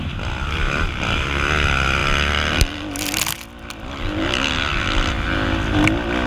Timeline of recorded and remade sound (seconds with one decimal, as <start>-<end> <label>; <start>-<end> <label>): 0.0-6.3 recorded